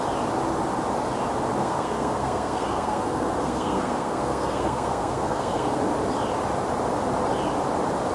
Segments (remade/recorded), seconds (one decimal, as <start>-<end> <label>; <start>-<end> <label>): 0.0-1.6 recorded; 1.6-5.8 remade; 5.8-8.1 recorded